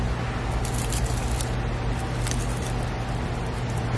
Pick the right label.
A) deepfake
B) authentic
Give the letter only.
B